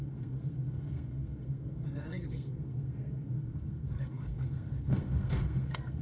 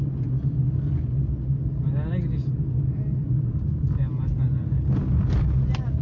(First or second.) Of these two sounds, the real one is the second